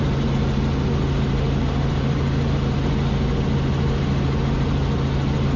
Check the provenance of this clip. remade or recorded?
recorded